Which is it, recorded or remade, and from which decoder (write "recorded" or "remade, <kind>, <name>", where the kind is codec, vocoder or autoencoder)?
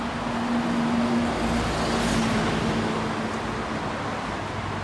recorded